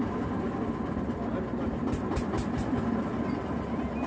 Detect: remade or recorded recorded